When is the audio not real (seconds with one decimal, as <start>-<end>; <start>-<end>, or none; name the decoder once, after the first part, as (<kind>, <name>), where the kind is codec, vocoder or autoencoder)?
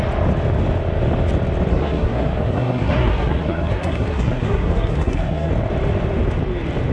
1.7-5.5 (codec, SNAC)